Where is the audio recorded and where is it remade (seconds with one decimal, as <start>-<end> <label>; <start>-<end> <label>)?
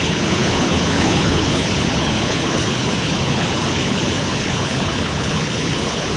0.0-6.2 remade